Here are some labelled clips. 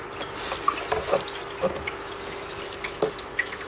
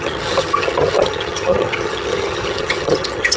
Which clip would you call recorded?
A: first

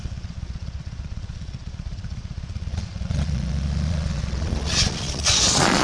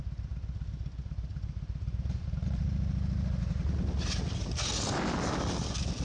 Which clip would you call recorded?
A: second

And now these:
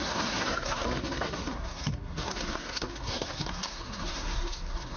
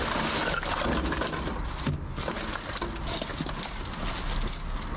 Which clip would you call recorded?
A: second